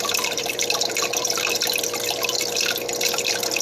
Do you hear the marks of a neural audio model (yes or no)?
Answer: yes